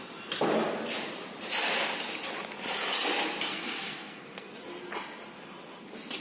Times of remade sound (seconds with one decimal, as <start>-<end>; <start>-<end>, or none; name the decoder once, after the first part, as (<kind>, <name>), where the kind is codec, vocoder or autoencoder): 3.5-4.5 (codec, SNAC)